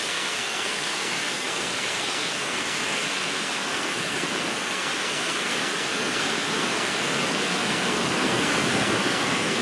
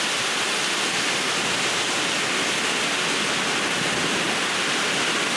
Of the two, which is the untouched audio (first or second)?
second